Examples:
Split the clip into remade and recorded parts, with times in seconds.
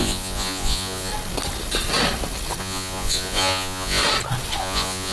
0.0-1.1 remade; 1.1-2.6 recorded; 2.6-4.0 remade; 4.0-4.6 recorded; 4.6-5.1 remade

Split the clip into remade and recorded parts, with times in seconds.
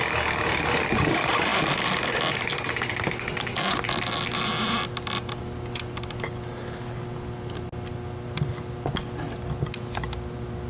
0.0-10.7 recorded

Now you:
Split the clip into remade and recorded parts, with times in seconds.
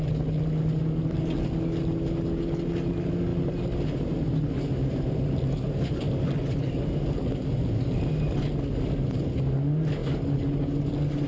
0.0-11.3 recorded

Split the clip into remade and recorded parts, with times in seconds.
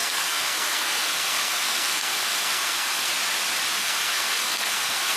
0.0-3.1 remade; 3.1-3.8 recorded; 3.8-5.2 remade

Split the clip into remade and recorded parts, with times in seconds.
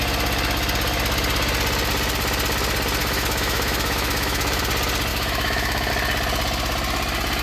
0.0-3.0 recorded; 3.0-4.6 remade; 4.6-5.1 recorded; 5.1-5.9 remade; 5.9-7.4 recorded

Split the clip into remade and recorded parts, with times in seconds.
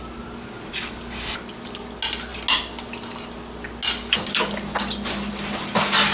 0.0-6.1 recorded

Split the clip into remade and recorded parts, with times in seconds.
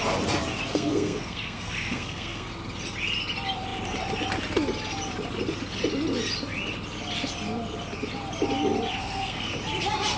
0.0-0.7 recorded; 0.7-2.5 remade; 2.5-9.0 recorded; 9.0-9.5 remade; 9.5-10.2 recorded